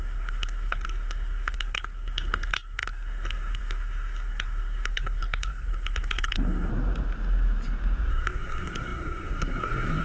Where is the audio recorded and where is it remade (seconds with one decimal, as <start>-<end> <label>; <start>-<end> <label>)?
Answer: 0.0-6.7 remade; 6.7-8.1 recorded; 8.1-10.0 remade